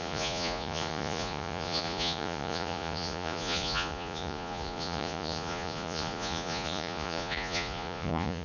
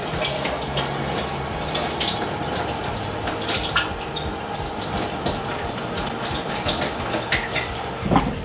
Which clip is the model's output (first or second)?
first